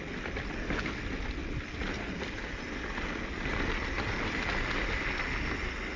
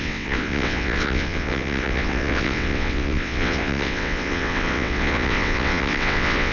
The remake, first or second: second